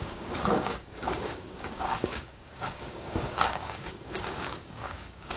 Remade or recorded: remade